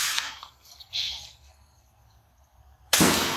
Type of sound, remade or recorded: remade